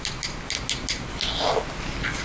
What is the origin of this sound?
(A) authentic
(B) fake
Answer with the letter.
A